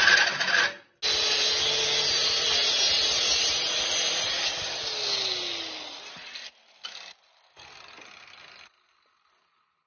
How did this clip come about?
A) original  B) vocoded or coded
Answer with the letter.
A